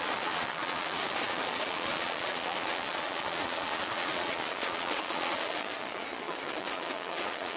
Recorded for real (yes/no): no